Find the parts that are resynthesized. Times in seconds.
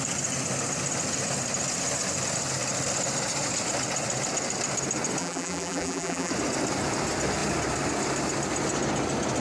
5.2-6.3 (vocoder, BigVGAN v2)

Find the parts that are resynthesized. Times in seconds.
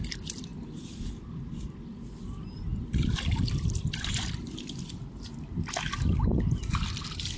none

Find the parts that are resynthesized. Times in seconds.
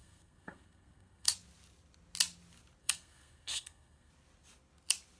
0.0-1.3 (codec, SNAC); 2.8-4.1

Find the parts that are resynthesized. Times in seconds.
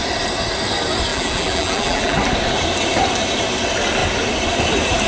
1.1-2.2 (vocoder, BigVGAN v2)